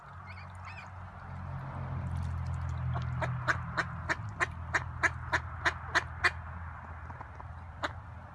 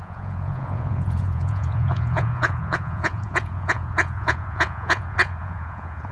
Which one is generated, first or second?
second